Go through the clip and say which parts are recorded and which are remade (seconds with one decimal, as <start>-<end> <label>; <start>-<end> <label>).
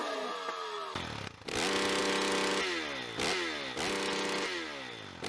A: 0.0-5.3 recorded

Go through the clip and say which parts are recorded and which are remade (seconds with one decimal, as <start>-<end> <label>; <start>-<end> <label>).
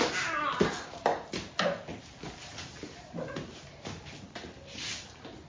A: 0.0-5.5 recorded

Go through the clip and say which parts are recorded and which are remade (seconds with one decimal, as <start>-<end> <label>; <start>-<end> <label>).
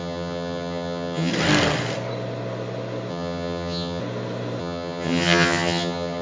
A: 0.0-1.3 remade; 1.3-3.1 recorded; 3.1-4.0 remade; 4.0-4.6 recorded; 4.6-6.2 remade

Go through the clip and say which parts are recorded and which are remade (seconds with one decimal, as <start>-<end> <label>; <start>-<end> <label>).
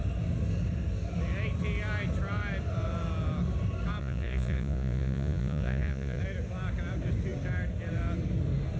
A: 0.0-4.0 recorded; 4.0-6.2 remade; 6.2-8.8 recorded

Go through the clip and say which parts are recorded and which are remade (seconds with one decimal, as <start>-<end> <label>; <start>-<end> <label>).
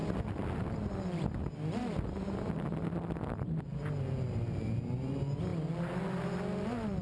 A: 0.0-7.0 recorded